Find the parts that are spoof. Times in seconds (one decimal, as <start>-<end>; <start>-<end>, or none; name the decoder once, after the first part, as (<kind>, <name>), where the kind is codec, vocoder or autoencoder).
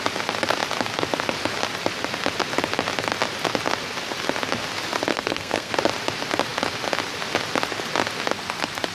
5.1-5.7 (codec, SNAC)